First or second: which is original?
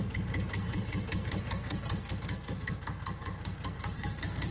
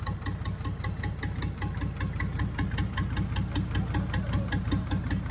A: second